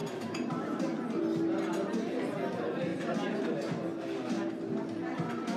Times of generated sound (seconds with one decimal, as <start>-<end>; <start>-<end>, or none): 0.0-1.2